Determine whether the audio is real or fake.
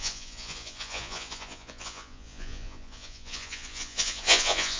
fake